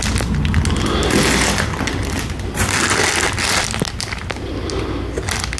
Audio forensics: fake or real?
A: real